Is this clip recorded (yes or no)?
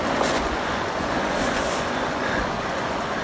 no